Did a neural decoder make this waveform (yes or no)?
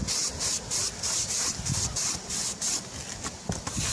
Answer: no